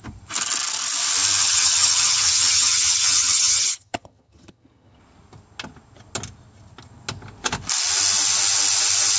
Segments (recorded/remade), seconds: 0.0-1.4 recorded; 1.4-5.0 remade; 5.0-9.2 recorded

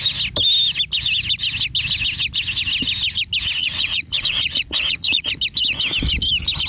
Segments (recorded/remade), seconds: 0.0-3.6 recorded; 3.6-5.3 remade; 5.3-6.7 recorded